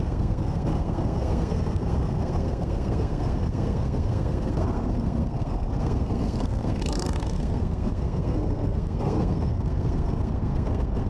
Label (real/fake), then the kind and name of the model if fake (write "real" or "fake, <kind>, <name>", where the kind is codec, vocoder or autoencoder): fake, codec, SNAC